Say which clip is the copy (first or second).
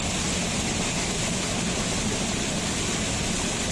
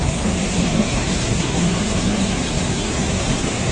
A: second